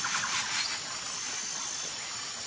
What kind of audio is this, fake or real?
real